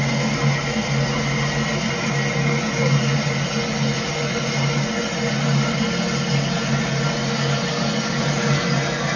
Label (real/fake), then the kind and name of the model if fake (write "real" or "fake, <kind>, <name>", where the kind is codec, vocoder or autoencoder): real